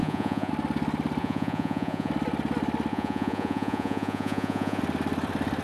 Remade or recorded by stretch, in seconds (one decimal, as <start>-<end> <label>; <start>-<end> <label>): 0.0-0.5 remade; 0.5-1.2 recorded; 1.2-2.1 remade; 2.1-2.9 recorded; 2.9-4.8 remade; 4.8-5.6 recorded